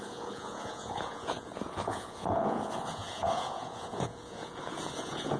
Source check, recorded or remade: remade